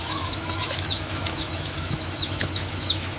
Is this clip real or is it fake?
fake